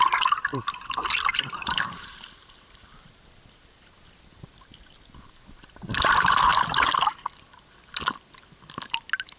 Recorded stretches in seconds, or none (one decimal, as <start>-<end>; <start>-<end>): 0.0-1.3; 3.2-9.4